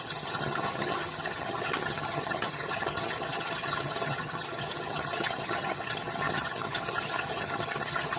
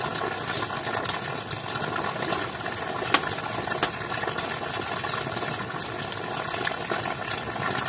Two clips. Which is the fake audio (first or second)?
first